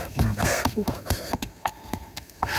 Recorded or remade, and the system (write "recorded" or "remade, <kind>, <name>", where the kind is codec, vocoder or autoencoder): remade, codec, SNAC